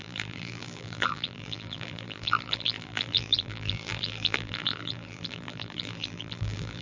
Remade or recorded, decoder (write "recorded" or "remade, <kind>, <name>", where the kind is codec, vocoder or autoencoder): remade, vocoder, BigVGAN v2